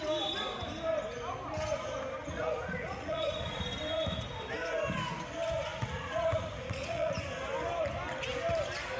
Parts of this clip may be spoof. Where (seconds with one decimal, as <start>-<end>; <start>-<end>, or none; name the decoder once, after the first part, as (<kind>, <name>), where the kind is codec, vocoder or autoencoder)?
2.2-3.6 (vocoder, Vocos); 5.7-7.1